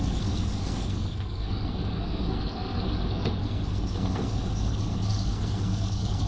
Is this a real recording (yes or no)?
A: no